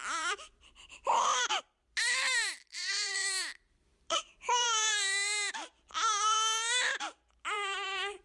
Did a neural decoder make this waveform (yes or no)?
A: yes